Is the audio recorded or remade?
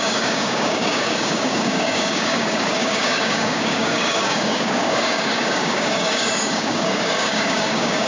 remade